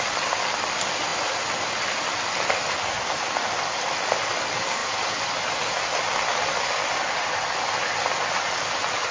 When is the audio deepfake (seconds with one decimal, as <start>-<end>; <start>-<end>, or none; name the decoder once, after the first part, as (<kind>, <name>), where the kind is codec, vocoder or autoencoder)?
none